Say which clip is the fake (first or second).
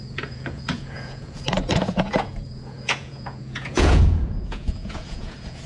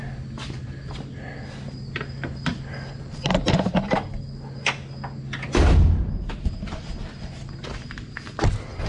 first